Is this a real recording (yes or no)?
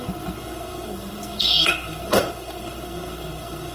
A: no